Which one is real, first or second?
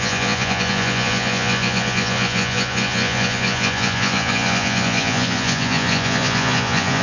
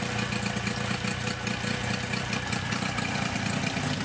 second